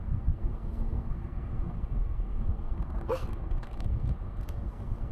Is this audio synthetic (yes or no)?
yes